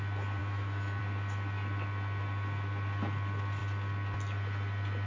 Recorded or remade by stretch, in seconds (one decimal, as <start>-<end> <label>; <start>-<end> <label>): 0.0-0.4 recorded; 0.4-1.0 remade; 1.0-5.1 recorded